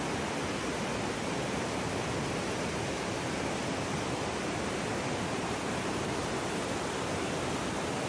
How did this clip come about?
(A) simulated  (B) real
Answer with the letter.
B